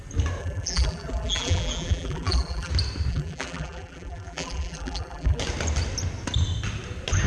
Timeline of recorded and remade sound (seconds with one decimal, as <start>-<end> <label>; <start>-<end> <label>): 0.0-0.4 recorded; 0.4-2.7 remade; 2.7-3.1 recorded; 3.1-5.4 remade; 5.4-7.3 recorded

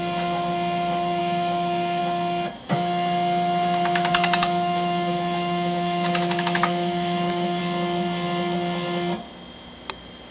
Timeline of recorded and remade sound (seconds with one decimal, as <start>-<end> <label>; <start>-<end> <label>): 0.0-1.2 recorded; 1.2-2.0 remade; 2.0-4.1 recorded; 4.1-7.6 remade; 7.6-10.3 recorded

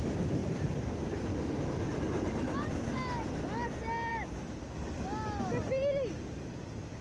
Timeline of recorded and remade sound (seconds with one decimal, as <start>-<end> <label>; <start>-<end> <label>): 0.0-4.1 recorded; 4.1-4.8 remade; 4.8-7.0 recorded

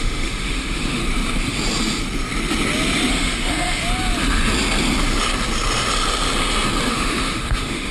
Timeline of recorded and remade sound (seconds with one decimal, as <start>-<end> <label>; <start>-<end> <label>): 0.0-1.0 remade; 1.0-3.1 recorded; 3.1-3.8 remade; 3.8-6.9 recorded; 6.9-7.9 remade

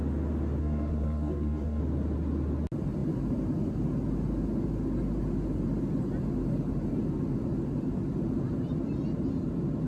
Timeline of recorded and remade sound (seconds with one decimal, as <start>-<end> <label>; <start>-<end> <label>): 0.0-0.6 recorded; 0.6-1.8 remade; 1.8-9.9 recorded

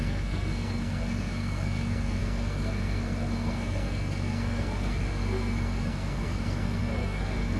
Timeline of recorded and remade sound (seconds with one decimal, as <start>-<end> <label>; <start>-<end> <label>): 0.0-7.6 remade

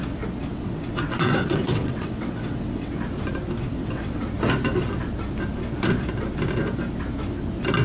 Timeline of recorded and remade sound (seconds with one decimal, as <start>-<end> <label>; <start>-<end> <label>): 0.0-0.5 recorded; 0.5-2.9 remade; 2.9-3.7 recorded; 3.7-4.2 remade; 4.2-7.8 recorded

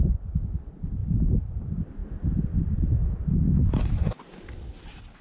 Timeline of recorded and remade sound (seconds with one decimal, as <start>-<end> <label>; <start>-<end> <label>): 0.0-5.2 recorded